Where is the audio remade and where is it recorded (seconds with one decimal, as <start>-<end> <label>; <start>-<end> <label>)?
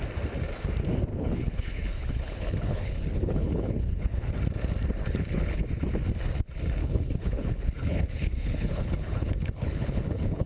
0.0-1.1 recorded; 1.1-4.3 remade; 4.3-5.0 recorded; 5.0-5.6 remade; 5.6-6.8 recorded; 6.8-10.5 remade